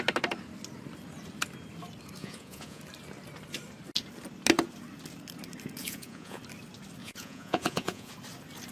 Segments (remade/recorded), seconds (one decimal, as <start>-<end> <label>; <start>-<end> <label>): 0.0-2.2 recorded; 2.2-2.8 remade; 2.8-5.8 recorded; 5.8-6.4 remade; 6.4-7.0 recorded; 7.0-8.1 remade; 8.1-8.7 recorded